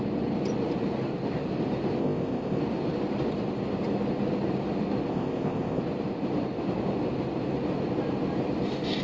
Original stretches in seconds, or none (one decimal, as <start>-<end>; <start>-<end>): 0.0-2.0; 2.6-5.1; 5.8-9.0